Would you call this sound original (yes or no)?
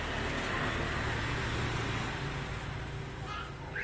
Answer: yes